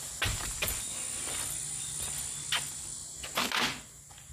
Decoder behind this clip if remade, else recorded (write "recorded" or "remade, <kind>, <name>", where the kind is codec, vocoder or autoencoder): recorded